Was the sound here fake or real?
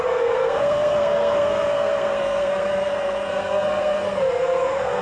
fake